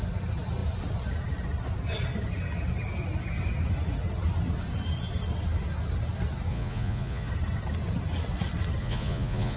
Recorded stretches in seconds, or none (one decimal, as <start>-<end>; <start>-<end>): 0.0-6.5; 7.3-8.8